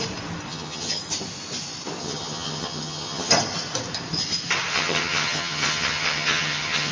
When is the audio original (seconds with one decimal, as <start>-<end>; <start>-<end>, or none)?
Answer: 0.0-0.5; 1.0-2.0; 3.3-4.7